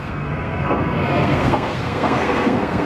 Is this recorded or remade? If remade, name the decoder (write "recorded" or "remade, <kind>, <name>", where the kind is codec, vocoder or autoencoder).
remade, codec, SNAC